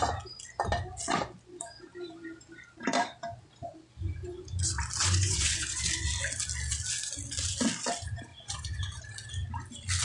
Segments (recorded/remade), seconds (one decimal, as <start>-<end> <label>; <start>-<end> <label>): 0.0-5.0 recorded; 5.0-5.8 remade; 5.8-8.3 recorded; 8.3-9.0 remade; 9.0-10.0 recorded